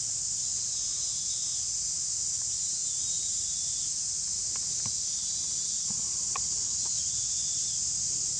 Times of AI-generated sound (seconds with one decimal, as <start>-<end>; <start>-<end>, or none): none